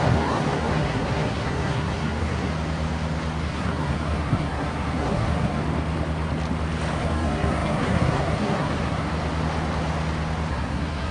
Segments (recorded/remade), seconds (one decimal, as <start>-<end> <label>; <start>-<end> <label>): 0.0-2.5 remade; 2.5-3.4 recorded; 3.4-5.6 remade; 5.6-7.0 recorded; 7.0-9.1 remade; 9.1-10.5 recorded; 10.5-11.1 remade